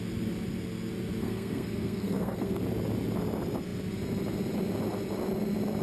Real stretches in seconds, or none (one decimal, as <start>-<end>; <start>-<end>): 0.0-1.2; 2.6-5.8